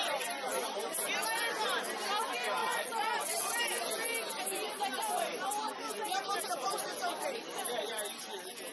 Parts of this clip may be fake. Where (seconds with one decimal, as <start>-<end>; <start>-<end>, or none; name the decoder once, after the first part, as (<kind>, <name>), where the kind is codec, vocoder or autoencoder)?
2.6-3.1 (vocoder, Vocos)